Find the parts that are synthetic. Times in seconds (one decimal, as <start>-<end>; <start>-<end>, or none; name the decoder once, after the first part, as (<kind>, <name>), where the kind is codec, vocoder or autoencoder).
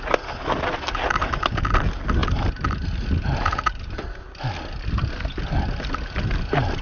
none